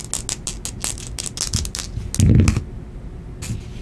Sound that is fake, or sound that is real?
real